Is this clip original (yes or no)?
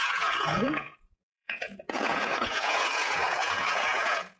no